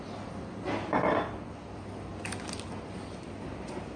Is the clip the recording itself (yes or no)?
yes